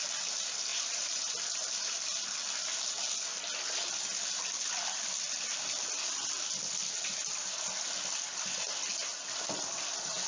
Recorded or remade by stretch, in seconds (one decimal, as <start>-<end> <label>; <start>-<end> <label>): 0.0-0.7 recorded; 0.7-1.3 remade; 1.3-10.3 recorded